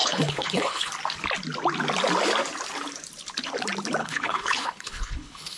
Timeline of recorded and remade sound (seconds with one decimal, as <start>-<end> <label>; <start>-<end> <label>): 0.0-0.9 remade; 0.9-4.0 recorded; 4.0-5.6 remade

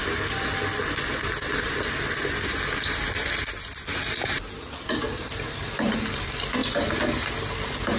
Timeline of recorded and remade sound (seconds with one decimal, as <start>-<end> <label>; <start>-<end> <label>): 0.0-8.0 recorded